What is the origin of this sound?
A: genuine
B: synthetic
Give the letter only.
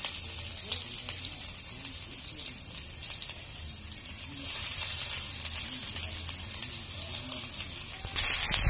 A